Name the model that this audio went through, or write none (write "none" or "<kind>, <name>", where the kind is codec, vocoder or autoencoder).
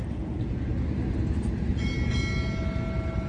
none